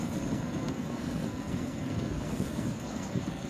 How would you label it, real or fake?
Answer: fake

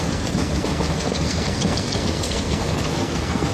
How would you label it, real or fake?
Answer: fake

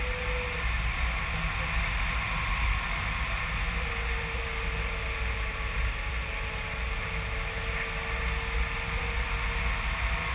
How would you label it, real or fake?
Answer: real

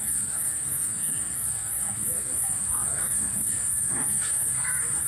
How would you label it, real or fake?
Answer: fake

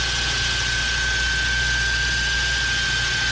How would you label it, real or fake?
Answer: real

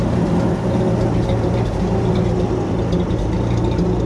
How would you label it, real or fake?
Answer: real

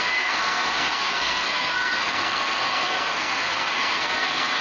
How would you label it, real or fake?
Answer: fake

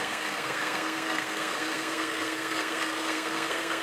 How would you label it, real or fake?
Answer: fake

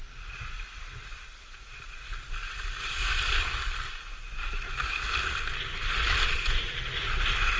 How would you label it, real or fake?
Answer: real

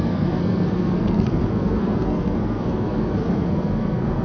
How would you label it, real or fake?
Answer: fake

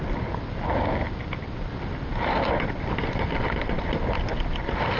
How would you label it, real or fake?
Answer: real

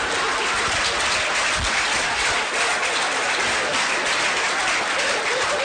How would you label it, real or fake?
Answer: real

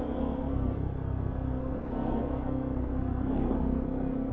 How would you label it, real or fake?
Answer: fake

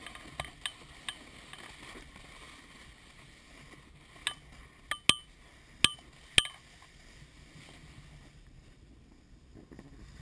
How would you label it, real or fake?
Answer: real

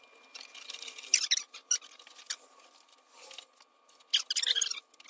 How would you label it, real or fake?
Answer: real